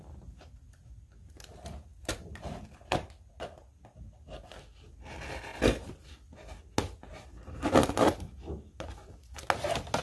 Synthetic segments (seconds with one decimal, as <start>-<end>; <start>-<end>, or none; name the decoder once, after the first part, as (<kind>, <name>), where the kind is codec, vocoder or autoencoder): none